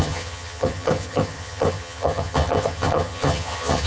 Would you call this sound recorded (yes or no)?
no